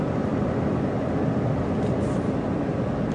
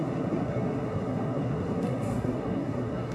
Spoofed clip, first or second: second